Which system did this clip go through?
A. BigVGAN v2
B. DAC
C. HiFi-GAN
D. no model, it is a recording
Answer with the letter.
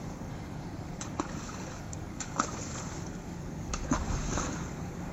B